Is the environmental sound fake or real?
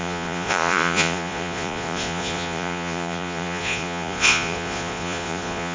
fake